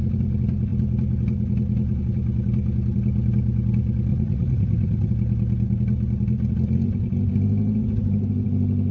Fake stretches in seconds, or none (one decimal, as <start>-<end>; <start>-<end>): 4.1-5.1